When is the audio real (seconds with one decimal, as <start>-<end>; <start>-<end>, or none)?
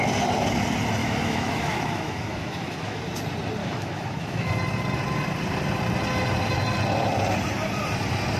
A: 0.0-1.0; 3.0-3.6; 4.5-8.4